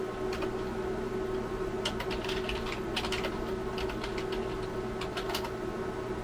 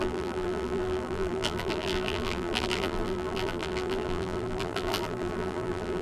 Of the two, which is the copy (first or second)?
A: second